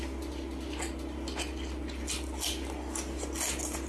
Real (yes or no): yes